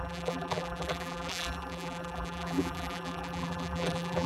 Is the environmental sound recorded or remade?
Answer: remade